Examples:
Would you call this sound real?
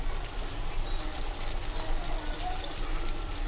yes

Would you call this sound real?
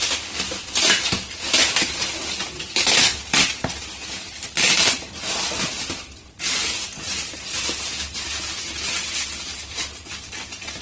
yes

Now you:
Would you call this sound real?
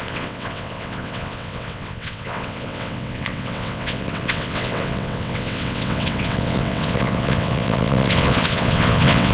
no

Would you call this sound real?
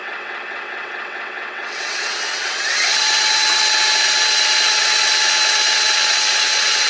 no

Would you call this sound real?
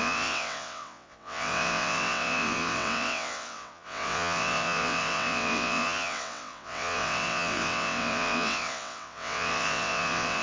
no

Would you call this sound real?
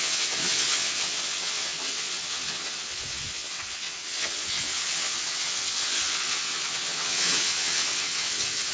no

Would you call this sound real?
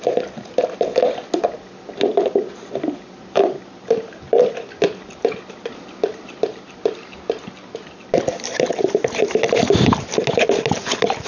yes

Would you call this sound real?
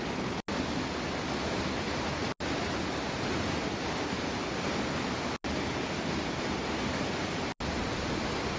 yes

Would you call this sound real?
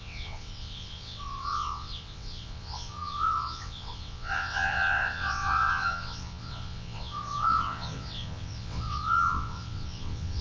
no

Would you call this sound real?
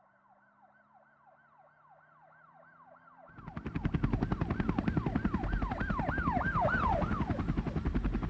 yes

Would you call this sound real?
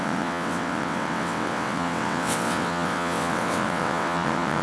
no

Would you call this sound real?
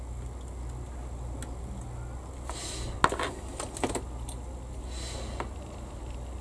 yes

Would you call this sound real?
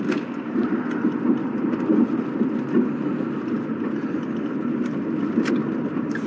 yes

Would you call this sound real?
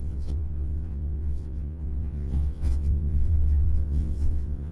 no